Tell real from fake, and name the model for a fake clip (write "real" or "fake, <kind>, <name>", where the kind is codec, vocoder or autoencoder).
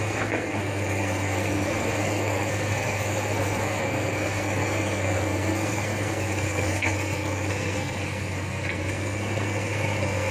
fake, codec, SNAC